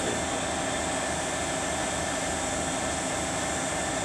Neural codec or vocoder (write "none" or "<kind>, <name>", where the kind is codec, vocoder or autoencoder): none